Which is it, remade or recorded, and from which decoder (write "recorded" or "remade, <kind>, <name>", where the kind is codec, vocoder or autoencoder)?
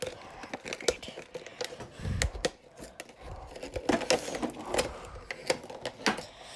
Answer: recorded